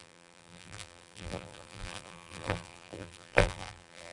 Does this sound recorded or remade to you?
remade